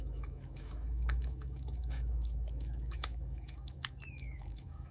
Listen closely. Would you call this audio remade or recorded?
remade